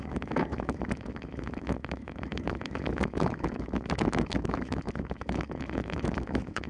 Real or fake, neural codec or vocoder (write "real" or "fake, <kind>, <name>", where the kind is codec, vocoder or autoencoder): fake, autoencoder, DAC-VAE